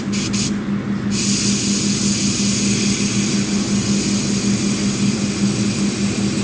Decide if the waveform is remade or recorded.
recorded